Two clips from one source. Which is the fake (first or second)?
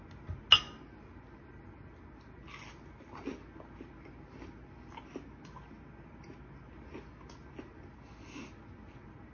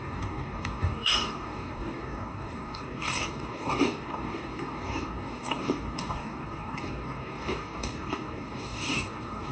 second